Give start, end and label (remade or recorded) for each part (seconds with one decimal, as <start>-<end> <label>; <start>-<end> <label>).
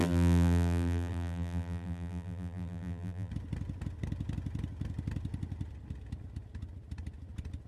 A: 0.0-3.3 remade; 3.3-7.7 recorded